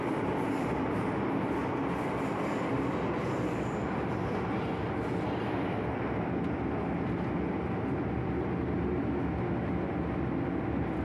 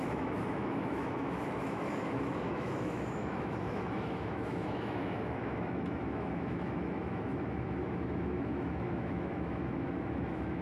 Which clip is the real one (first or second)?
first